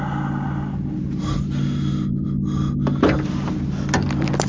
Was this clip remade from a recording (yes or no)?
no